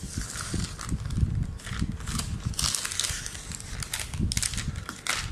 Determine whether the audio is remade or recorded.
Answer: recorded